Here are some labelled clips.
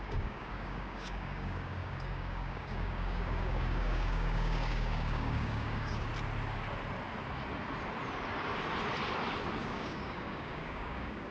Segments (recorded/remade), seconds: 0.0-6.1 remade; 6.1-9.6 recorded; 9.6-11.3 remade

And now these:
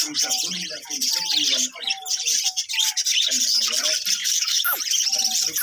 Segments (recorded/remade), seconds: 0.0-4.2 recorded; 4.2-4.8 remade; 4.8-5.6 recorded

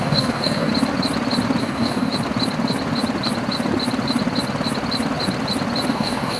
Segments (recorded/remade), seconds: 0.0-0.7 remade; 0.7-1.6 recorded; 1.6-2.1 remade; 2.1-5.9 recorded; 5.9-6.4 remade

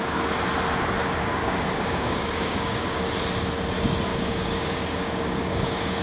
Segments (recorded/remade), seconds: 0.0-1.0 recorded; 1.0-3.0 remade; 3.0-4.1 recorded; 4.1-6.0 remade

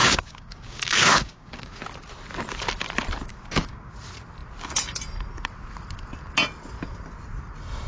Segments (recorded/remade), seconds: 0.0-1.8 remade; 1.8-3.3 recorded; 3.3-3.9 remade; 3.9-7.9 recorded

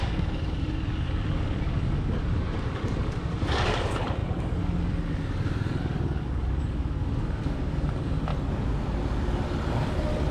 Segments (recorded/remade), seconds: 0.0-8.3 remade; 8.3-10.3 recorded

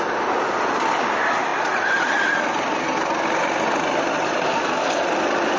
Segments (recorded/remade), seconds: 0.0-5.6 recorded

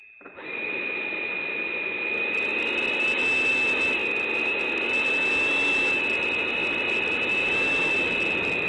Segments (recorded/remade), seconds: 0.0-8.7 recorded